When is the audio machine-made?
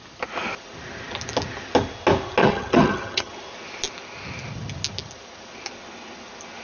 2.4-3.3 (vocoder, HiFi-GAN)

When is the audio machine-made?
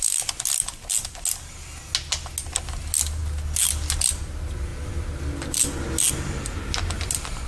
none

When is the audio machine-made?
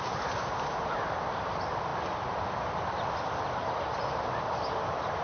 0.0-1.9 (vocoder, BigVGAN v2); 3.2-5.2